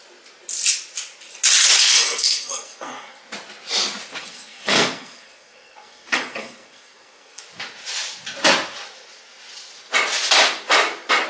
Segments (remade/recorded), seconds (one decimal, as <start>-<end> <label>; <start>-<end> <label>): 0.0-1.8 recorded; 1.8-3.2 remade; 3.2-4.2 recorded; 4.2-7.4 remade; 7.4-11.3 recorded